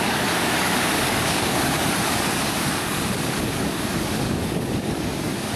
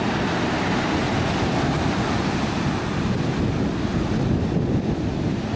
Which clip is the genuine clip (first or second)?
second